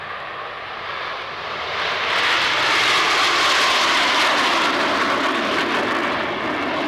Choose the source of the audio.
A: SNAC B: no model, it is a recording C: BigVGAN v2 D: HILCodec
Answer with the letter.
B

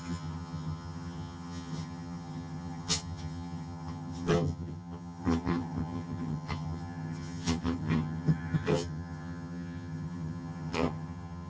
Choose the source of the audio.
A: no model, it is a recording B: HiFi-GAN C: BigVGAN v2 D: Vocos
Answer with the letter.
B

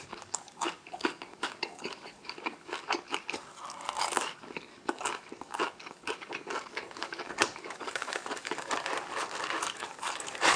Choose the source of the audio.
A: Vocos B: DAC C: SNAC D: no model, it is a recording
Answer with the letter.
B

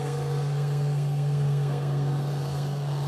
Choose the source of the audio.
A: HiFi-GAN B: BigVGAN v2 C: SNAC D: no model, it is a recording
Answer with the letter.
C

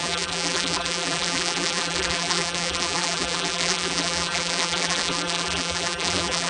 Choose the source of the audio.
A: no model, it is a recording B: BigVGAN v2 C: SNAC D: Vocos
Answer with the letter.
B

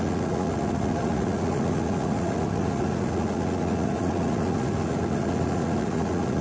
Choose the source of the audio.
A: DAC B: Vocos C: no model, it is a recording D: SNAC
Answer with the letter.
B